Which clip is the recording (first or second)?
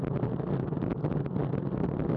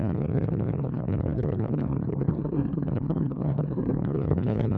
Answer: first